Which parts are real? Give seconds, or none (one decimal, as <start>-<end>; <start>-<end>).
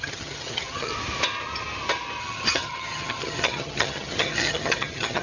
0.9-2.2